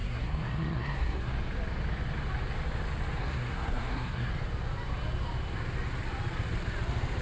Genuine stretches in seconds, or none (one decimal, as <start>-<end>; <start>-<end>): 1.3-3.2; 4.3-7.2